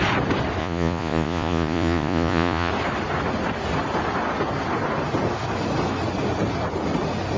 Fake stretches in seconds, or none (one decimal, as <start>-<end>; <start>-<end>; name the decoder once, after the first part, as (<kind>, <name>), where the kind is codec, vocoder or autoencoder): 0.6-2.7 (vocoder, Vocos)

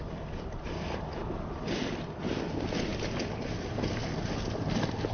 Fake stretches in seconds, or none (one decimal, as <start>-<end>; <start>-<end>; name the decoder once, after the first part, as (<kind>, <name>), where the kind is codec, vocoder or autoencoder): none

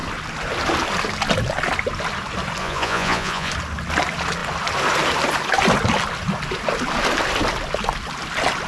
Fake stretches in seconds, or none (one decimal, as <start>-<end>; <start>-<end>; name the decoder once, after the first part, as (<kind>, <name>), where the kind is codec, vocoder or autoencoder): 2.6-3.5 (vocoder, Vocos)

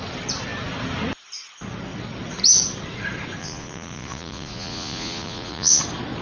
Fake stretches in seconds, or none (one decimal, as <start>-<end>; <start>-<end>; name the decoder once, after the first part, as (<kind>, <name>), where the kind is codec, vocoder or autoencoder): 3.4-5.8 (vocoder, Vocos)

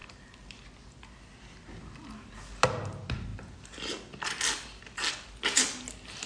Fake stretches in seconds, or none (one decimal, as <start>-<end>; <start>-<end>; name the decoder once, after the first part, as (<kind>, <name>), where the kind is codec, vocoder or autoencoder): none

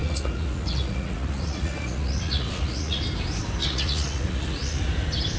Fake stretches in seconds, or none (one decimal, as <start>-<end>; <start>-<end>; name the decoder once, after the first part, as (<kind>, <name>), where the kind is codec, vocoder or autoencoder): 0.0-3.0 (vocoder, Vocos); 3.6-4.8

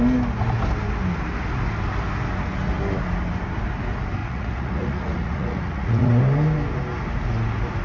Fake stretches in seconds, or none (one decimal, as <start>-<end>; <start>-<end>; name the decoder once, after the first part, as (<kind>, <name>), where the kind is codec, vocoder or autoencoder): 4.2-6.2 (vocoder, Vocos)